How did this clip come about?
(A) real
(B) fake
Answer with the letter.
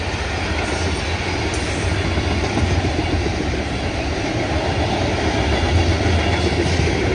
A